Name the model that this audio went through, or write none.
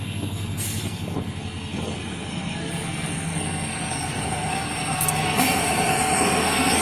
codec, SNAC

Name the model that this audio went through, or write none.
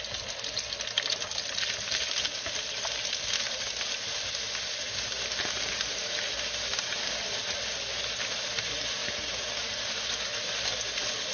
none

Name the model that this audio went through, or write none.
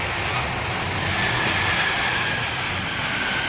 none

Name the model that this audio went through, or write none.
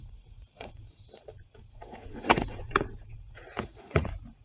vocoder, Vocos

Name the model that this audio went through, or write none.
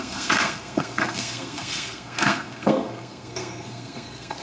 codec, SNAC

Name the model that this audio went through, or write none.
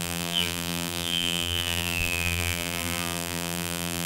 vocoder, BigVGAN v2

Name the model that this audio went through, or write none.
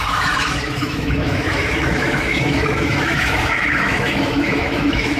autoencoder, DAC-VAE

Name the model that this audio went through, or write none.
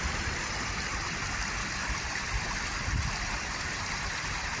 vocoder, BigVGAN v2